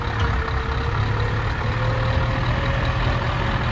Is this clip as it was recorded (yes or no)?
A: yes